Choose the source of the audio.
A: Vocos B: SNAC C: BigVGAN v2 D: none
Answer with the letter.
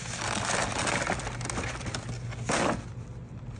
D